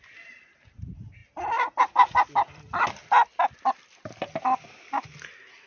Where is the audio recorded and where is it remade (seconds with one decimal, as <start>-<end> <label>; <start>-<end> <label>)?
0.0-5.7 recorded